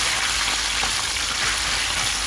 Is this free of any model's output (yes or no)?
yes